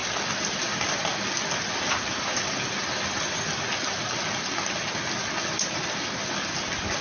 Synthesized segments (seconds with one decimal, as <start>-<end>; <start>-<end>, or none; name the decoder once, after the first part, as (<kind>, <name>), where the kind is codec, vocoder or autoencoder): none